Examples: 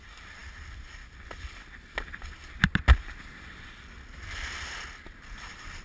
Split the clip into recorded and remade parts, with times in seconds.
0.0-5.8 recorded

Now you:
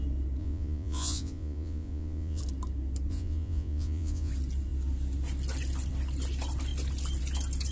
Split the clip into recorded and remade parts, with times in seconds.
0.0-0.4 recorded; 0.4-2.4 remade; 2.4-3.1 recorded; 3.1-4.3 remade; 4.3-7.7 recorded

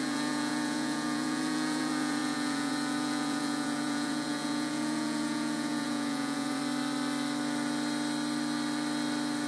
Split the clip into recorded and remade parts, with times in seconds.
0.0-6.6 remade; 6.6-9.5 recorded

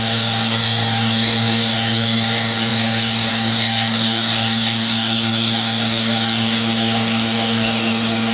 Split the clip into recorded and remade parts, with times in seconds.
0.0-8.3 remade

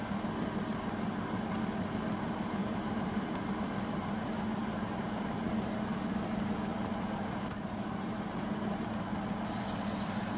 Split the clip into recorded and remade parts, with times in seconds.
0.0-2.6 recorded; 2.6-3.5 remade; 3.5-4.6 recorded; 4.6-5.8 remade; 5.8-6.7 recorded; 6.7-9.2 remade; 9.2-10.4 recorded

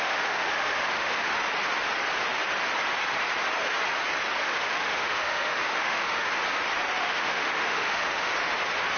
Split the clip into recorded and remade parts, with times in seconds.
0.0-1.3 remade; 1.3-4.4 recorded; 4.4-6.3 remade; 6.3-7.0 recorded; 7.0-8.3 remade; 8.3-9.0 recorded